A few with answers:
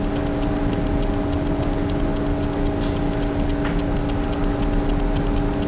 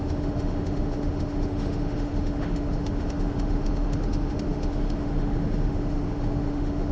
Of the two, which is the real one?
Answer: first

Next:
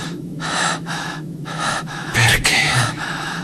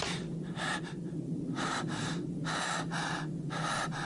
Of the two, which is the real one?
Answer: second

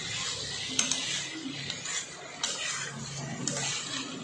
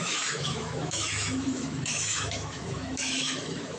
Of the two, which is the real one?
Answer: first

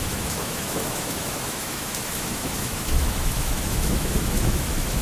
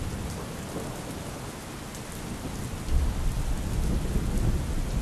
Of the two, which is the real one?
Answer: second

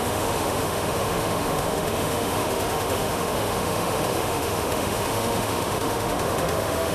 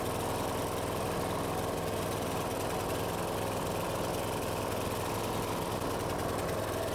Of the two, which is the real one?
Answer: second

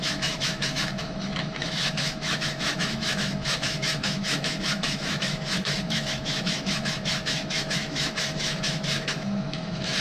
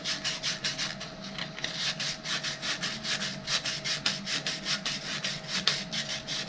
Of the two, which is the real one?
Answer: second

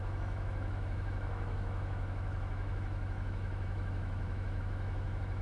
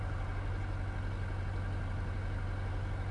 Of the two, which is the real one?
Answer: second